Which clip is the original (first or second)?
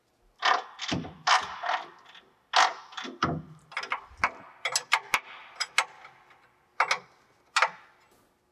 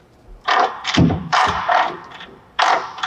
first